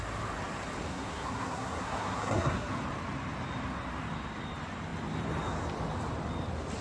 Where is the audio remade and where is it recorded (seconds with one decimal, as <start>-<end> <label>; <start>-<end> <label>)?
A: 0.0-0.9 recorded; 0.9-2.7 remade; 2.7-6.8 recorded